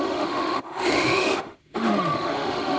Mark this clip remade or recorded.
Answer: remade